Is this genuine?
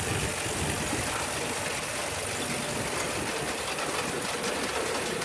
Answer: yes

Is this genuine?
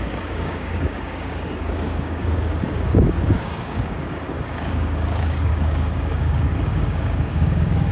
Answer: no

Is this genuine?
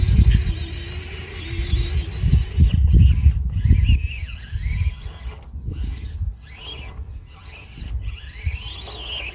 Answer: yes